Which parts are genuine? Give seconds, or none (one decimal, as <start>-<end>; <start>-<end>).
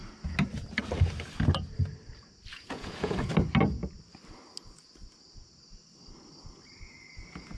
0.0-2.5; 3.3-7.6